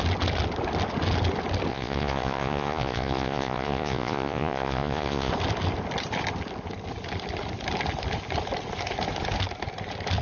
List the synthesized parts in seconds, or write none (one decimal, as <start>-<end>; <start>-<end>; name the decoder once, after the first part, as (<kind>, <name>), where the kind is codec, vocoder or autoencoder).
1.7-5.3 (vocoder, Vocos)